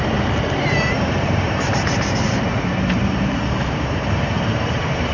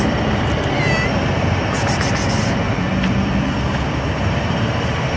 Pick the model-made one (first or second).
first